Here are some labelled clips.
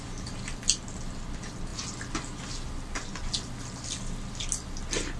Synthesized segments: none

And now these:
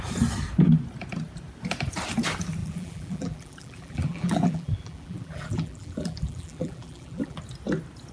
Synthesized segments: 2.6-7.4 (vocoder, BigVGAN v2)

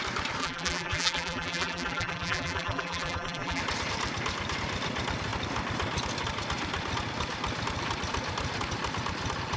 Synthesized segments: 0.4-3.6 (vocoder, BigVGAN v2)

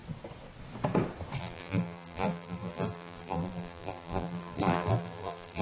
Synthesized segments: 1.4-5.6 (vocoder, BigVGAN v2)